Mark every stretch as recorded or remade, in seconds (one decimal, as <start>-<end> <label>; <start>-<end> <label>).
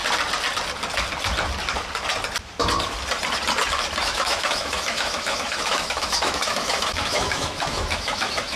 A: 0.0-4.0 recorded; 4.0-8.6 remade